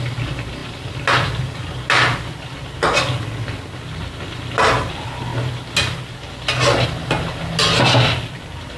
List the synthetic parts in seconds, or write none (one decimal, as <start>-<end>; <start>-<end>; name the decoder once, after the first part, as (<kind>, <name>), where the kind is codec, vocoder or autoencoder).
none